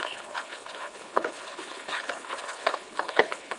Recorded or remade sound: remade